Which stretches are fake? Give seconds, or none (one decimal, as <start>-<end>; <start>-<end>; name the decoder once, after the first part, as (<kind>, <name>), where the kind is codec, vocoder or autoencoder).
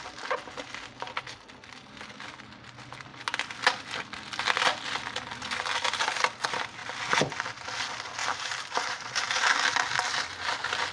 8.2-9.1 (vocoder, BigVGAN v2)